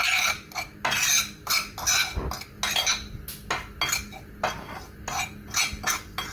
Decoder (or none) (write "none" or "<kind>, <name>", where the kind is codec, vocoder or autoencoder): none